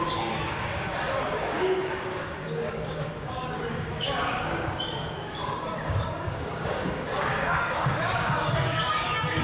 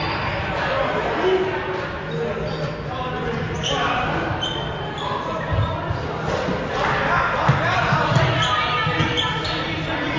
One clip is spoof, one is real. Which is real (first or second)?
second